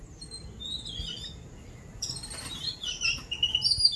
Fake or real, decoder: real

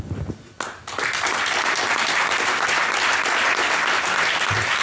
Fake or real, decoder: real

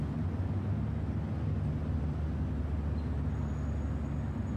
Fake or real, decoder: real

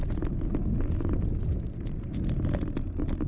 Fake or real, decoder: real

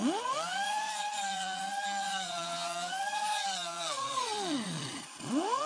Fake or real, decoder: fake, vocoder, Vocos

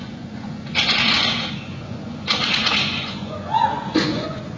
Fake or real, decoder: fake, vocoder, Vocos